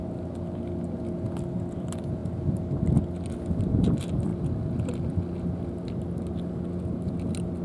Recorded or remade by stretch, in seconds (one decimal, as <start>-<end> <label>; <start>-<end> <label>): 0.0-7.6 recorded